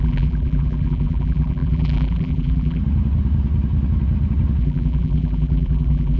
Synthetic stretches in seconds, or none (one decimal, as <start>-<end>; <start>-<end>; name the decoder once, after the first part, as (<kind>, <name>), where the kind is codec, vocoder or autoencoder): 0.0-2.8 (vocoder, BigVGAN v2); 4.6-6.2